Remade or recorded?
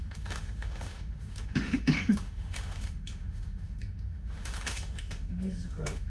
remade